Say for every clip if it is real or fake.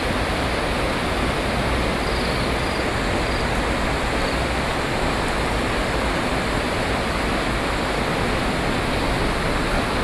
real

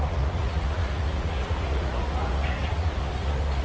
fake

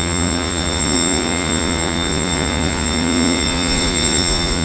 fake